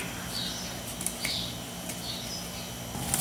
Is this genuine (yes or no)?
yes